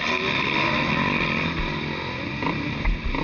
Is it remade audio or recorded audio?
recorded